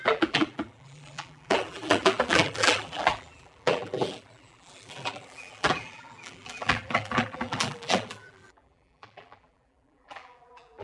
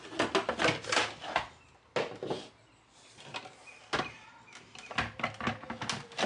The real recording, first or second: second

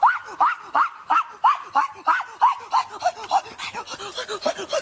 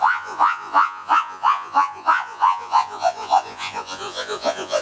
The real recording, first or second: first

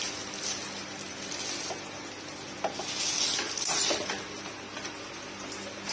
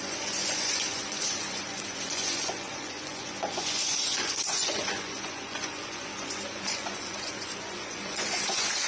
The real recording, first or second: first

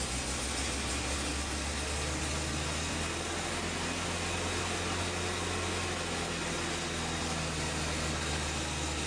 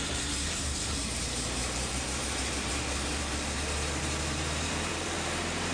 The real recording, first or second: first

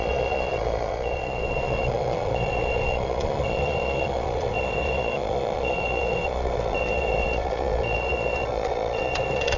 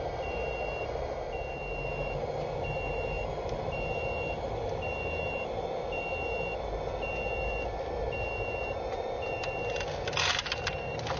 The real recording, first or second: second